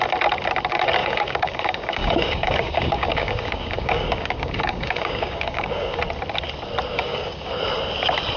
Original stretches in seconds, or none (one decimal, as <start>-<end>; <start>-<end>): 0.0-1.0; 6.0-6.9; 7.5-8.4